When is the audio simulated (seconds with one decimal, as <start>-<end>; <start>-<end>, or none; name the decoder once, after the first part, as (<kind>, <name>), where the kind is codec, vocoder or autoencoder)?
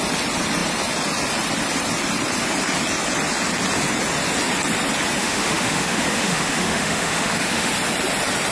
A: 5.2-7.7 (autoencoder, DAC-VAE)